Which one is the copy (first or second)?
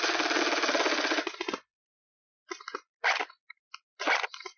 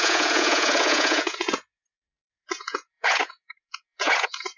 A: second